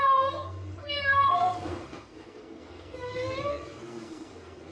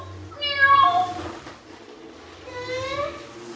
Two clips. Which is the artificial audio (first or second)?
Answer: first